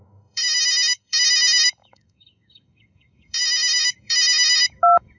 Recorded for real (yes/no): no